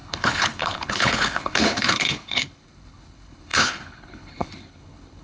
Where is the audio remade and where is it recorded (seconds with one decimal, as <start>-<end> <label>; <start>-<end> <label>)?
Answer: 0.0-5.2 remade